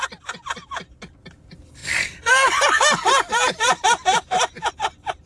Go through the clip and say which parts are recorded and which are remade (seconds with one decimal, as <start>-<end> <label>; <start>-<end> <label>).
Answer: 0.0-1.8 recorded; 1.8-4.7 remade; 4.7-5.3 recorded